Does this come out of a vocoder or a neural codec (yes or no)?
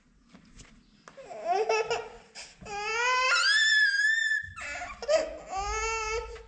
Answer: no